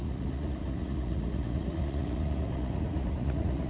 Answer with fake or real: fake